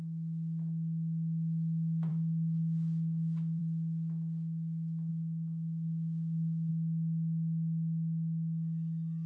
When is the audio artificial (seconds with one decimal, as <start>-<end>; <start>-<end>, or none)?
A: 2.1-3.6; 5.1-6.7